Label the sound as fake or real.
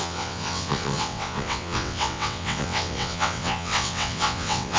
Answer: fake